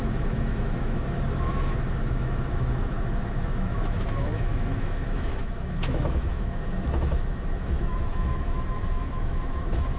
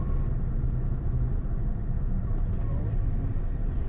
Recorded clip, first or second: second